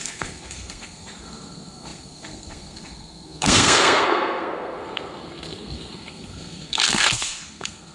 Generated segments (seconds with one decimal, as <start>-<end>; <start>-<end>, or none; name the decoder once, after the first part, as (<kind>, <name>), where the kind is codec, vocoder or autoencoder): 0.0-7.9 (codec, SNAC)